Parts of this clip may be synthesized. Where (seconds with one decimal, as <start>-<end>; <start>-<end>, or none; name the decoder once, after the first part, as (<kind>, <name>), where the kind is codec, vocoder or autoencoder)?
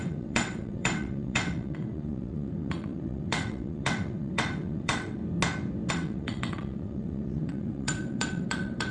0.0-5.2 (vocoder, WaveNeXt); 5.9-8.9